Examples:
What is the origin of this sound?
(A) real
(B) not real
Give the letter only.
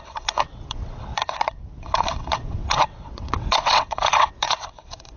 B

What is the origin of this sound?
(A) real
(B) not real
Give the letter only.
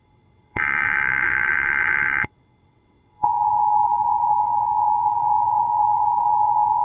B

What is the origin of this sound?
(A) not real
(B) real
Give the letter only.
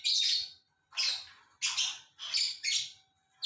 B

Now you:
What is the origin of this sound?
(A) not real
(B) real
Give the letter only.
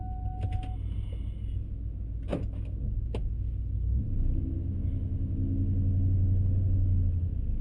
B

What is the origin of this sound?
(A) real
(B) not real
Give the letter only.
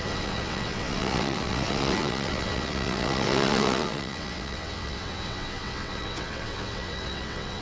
B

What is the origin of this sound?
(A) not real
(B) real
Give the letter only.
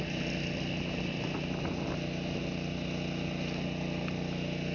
B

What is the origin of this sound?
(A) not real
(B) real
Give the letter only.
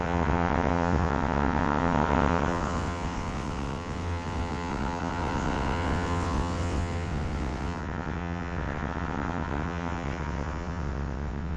A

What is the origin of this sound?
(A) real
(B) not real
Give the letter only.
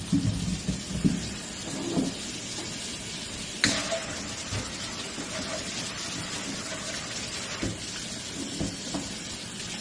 A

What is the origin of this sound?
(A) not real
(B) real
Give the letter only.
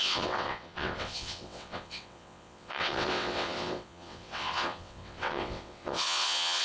A